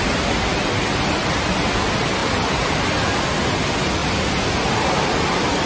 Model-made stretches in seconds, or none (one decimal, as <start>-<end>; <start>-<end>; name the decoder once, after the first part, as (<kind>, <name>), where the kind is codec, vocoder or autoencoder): 2.2-2.8 (vocoder, BigVGAN v2); 4.0-5.7